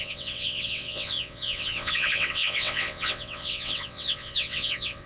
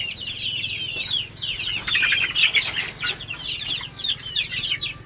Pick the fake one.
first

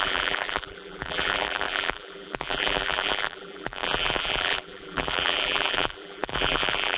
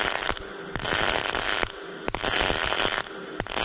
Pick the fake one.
first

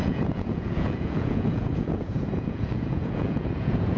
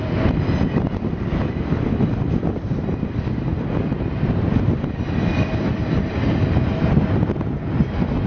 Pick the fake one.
first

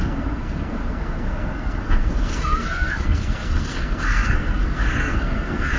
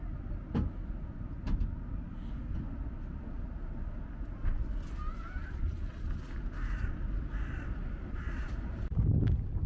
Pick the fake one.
first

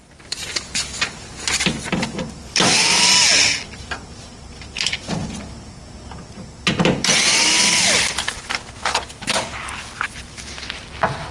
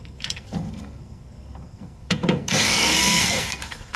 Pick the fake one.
second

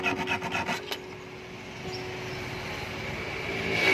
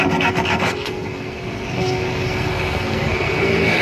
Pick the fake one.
second